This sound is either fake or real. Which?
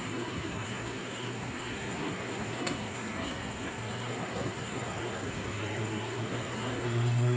fake